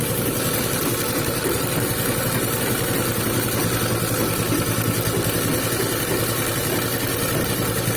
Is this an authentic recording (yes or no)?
yes